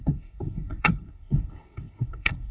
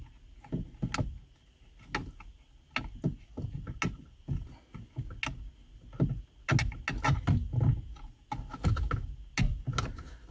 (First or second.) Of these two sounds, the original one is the second